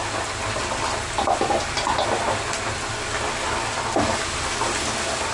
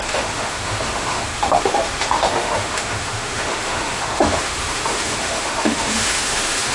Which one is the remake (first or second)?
second